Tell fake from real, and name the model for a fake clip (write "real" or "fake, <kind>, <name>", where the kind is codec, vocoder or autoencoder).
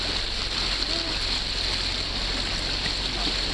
real